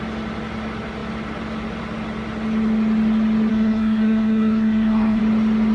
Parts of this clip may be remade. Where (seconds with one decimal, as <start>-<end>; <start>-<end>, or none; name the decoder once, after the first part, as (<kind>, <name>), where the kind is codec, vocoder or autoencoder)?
3.5-5.2 (codec, SNAC)